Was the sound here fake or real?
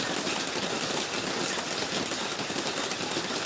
real